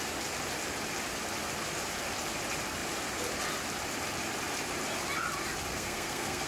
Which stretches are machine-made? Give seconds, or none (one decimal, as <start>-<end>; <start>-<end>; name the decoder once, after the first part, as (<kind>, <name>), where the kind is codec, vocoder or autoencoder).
5.7-6.5 (codec, SNAC)